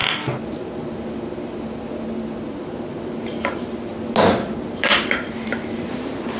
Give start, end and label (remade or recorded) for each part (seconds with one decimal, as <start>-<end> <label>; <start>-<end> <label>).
0.0-2.9 recorded; 2.9-3.9 remade; 3.9-4.7 recorded; 4.7-6.4 remade